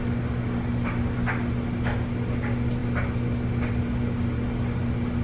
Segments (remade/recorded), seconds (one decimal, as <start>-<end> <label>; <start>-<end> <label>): 0.0-5.2 recorded